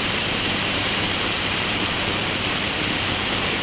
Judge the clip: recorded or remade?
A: remade